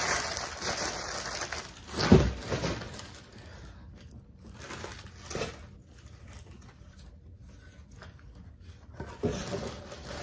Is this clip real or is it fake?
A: real